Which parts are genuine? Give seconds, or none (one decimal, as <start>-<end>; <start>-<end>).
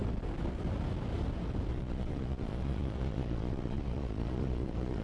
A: 0.0-1.7